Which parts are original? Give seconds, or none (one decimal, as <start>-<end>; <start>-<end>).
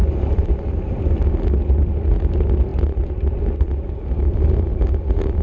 0.0-5.4